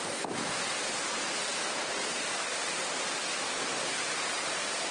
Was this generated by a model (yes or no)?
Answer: no